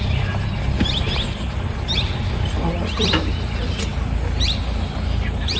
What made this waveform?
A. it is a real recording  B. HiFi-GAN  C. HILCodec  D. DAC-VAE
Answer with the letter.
A